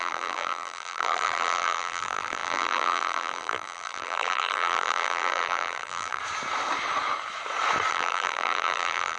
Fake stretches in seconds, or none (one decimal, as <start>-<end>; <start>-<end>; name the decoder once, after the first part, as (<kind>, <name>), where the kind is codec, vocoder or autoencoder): 0.0-6.2 (vocoder, BigVGAN v2); 7.9-9.2